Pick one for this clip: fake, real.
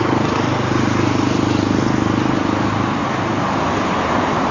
real